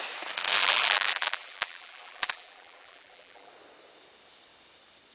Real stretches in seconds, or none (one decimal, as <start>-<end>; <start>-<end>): 0.0-0.6; 3.5-5.1